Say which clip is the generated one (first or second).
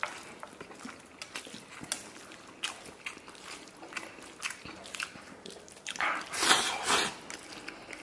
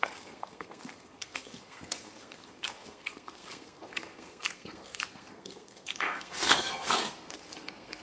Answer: second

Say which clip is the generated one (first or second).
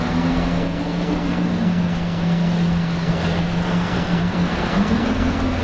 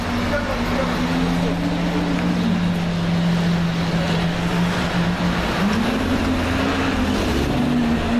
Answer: first